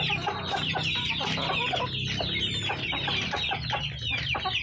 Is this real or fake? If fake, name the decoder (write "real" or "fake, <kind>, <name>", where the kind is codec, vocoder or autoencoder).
real